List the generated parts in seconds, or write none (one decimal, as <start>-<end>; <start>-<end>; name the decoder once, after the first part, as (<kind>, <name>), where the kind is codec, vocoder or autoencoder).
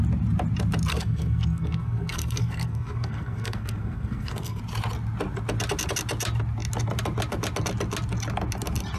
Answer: 0.9-4.6 (codec, SNAC)